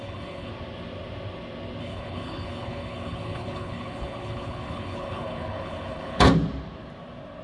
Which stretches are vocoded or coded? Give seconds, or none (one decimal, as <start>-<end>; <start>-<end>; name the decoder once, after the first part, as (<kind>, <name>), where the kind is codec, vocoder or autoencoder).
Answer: 0.0-0.5 (codec, HILCodec); 1.8-6.2